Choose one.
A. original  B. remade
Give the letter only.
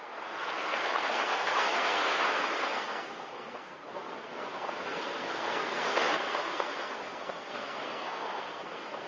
B